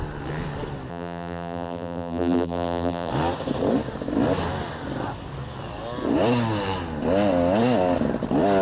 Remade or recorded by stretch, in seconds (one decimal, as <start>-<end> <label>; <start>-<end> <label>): 0.0-0.9 recorded; 0.9-3.1 remade; 3.1-8.6 recorded